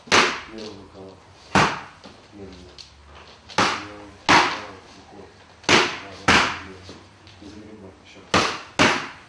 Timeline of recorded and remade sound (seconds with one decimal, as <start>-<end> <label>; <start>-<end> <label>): 0.0-0.6 recorded; 0.6-1.7 remade; 1.7-5.9 recorded; 5.9-7.5 remade; 7.5-9.3 recorded